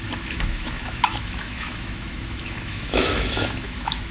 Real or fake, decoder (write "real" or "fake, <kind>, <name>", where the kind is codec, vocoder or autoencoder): fake, autoencoder, DAC-VAE